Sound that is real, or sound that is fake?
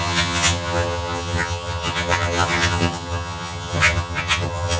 fake